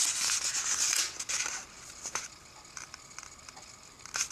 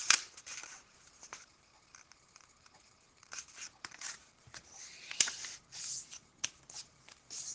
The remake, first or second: second